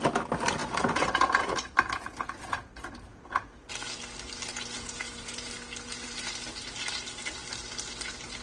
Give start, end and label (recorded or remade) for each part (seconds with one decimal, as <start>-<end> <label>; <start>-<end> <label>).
0.0-0.6 recorded; 0.6-2.7 remade; 2.7-3.1 recorded; 3.1-3.7 remade; 3.7-4.5 recorded; 4.5-5.5 remade; 5.5-8.4 recorded